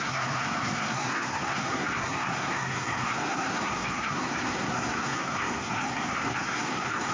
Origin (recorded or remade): remade